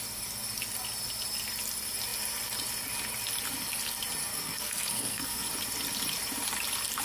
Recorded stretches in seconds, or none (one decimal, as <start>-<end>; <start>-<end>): 0.0-4.3; 5.5-7.0